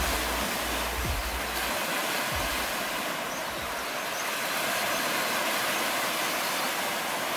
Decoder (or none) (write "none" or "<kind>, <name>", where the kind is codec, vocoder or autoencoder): none